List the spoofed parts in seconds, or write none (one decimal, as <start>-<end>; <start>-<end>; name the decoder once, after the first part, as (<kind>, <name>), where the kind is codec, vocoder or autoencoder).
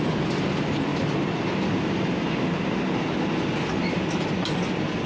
none